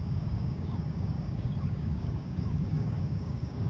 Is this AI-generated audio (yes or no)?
yes